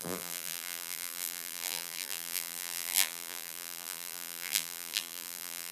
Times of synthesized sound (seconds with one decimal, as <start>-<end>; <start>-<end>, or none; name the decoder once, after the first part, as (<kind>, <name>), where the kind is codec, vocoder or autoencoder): 0.0-5.7 (vocoder, BigVGAN v2)